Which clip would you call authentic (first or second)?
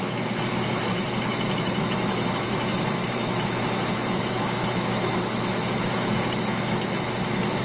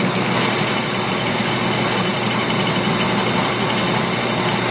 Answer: second